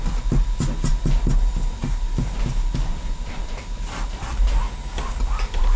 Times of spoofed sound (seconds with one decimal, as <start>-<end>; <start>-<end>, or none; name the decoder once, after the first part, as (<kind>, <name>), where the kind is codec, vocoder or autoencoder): 1.8-4.6 (vocoder, BigVGAN v2)